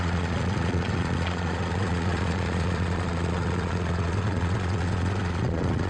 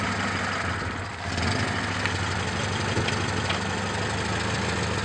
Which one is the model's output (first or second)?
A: first